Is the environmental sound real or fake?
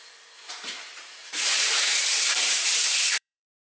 fake